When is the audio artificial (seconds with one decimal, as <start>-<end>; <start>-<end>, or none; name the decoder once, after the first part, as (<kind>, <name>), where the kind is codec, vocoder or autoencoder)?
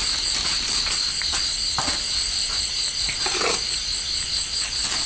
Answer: none